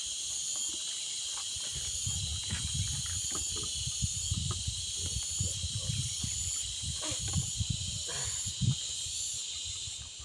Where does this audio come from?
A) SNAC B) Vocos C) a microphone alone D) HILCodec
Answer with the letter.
C